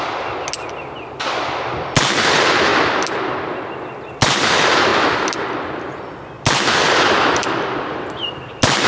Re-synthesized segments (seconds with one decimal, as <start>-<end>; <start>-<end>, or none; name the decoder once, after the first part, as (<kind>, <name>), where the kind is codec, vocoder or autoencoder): none

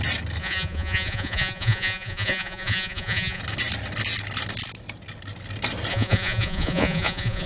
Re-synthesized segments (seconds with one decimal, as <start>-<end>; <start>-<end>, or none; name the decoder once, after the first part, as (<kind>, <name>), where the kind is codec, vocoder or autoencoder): 0.4-3.4 (vocoder, Vocos); 5.9-7.5

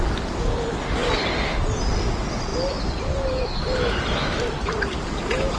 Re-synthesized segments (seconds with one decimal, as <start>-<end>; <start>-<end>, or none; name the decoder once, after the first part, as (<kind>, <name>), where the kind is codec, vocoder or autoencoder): none

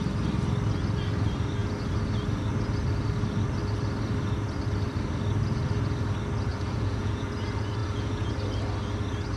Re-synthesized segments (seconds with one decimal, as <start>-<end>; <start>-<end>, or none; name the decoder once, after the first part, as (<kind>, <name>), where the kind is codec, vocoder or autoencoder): 6.5-7.3 (vocoder, Vocos); 7.8-8.3

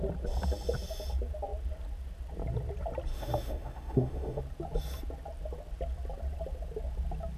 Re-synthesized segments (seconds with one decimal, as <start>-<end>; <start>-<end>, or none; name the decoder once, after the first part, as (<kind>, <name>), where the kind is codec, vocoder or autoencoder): 3.1-4.4 (autoencoder, DAC-VAE)

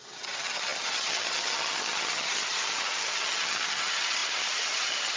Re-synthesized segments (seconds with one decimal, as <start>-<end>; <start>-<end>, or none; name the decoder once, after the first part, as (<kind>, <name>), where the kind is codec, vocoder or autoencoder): 0.0-5.2 (vocoder, HiFi-GAN)

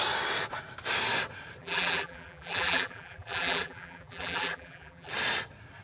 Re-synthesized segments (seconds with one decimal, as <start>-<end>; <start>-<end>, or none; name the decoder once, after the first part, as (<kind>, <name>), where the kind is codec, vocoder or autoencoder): 1.6-5.1 (vocoder, BigVGAN v2)

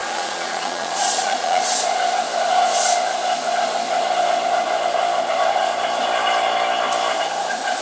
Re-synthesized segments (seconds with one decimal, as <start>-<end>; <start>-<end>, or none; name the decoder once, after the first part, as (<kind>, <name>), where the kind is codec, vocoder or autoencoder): 0.0-1.6 (vocoder, Vocos)